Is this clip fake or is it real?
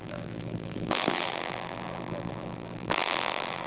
fake